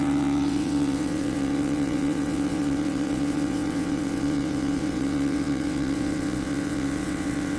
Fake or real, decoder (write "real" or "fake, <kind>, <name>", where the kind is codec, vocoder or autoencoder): fake, vocoder, WaveNeXt